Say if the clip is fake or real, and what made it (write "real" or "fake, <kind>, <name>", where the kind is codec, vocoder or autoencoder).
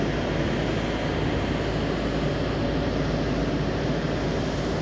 real